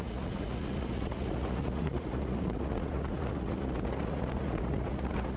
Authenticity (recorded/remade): remade